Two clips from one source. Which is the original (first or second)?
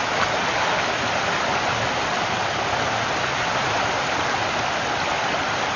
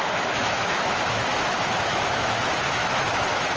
first